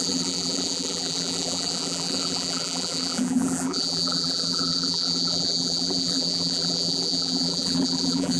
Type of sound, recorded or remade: remade